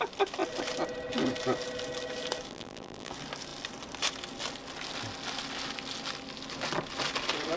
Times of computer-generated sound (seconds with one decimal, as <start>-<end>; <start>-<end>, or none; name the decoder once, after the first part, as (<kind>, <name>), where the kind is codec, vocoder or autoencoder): 2.5-3.1 (vocoder, BigVGAN v2)